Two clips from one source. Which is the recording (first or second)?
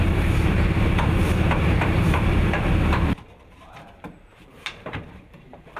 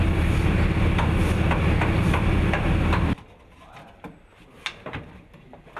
second